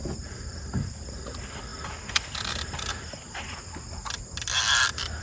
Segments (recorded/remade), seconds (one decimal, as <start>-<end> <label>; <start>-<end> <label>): 0.0-5.2 recorded